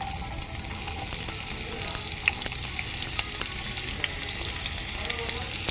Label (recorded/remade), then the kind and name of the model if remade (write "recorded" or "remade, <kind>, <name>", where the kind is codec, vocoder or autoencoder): recorded